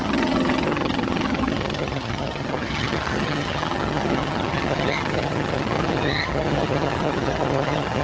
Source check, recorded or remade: remade